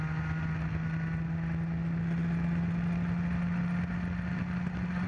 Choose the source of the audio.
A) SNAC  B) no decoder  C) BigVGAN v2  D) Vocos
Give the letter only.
B